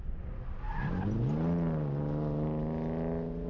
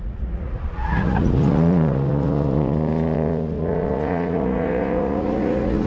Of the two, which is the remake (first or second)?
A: second